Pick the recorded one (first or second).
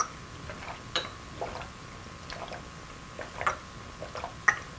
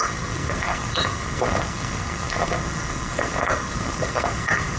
first